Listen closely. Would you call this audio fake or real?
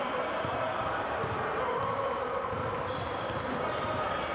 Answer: real